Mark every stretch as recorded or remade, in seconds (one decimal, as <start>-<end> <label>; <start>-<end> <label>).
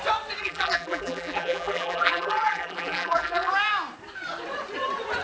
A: 0.0-0.4 recorded; 0.4-3.5 remade; 3.5-5.2 recorded